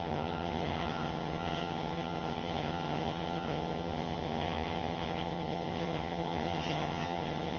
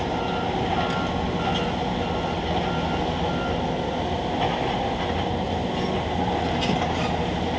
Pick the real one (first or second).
second